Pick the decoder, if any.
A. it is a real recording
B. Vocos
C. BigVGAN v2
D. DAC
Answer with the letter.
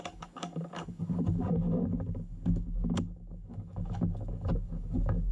D